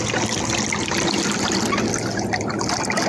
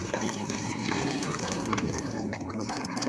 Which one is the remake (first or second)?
second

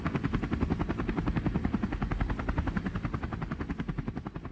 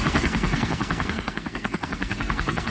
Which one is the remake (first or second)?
second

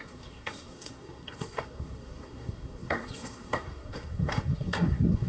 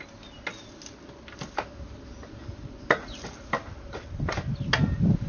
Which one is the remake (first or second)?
first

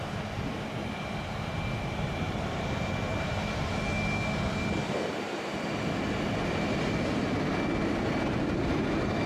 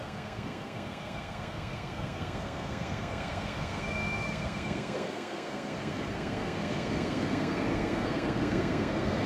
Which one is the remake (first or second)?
second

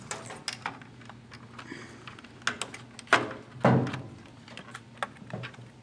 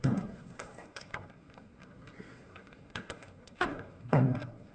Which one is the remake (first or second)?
second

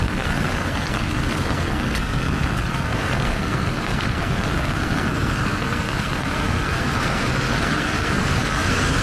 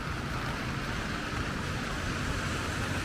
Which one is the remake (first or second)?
first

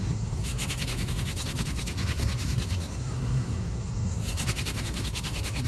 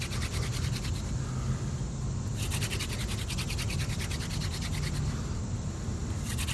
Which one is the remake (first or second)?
first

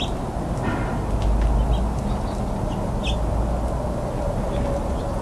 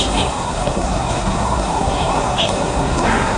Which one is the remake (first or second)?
second